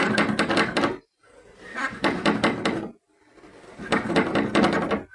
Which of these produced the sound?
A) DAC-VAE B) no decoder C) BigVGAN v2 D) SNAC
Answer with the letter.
C